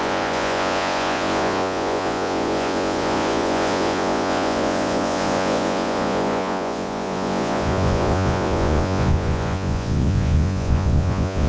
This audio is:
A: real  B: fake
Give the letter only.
B